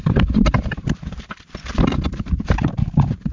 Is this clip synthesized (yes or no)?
yes